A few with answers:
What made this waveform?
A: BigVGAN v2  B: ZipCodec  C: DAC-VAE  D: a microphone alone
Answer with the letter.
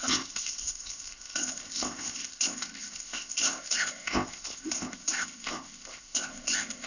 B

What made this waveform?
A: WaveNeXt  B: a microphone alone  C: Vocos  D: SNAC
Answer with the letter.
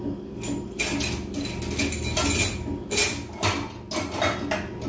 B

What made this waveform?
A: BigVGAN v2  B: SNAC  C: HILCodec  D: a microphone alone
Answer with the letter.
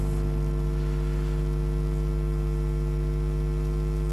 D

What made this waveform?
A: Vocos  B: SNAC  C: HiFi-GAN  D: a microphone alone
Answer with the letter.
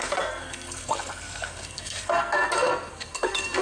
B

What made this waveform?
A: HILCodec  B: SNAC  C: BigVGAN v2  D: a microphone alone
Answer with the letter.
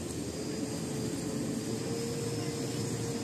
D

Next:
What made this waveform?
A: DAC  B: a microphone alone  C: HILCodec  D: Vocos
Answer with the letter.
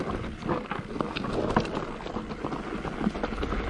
B